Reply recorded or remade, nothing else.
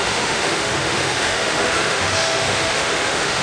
remade